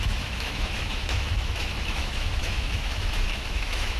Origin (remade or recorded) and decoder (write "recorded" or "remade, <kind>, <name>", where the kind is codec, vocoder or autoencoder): remade, autoencoder, DAC-VAE